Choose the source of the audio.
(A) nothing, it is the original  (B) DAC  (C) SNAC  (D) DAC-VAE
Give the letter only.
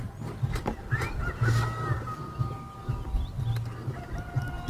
A